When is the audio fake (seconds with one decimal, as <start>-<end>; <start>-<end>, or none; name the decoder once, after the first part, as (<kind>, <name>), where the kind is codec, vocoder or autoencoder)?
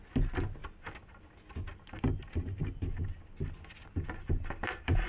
none